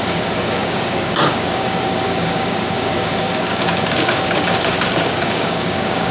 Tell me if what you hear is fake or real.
fake